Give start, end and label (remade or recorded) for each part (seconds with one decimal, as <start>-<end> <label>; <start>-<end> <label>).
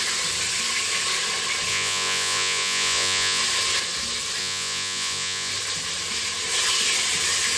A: 0.0-1.7 recorded; 1.7-3.4 remade; 3.4-4.4 recorded; 4.4-5.5 remade; 5.5-7.6 recorded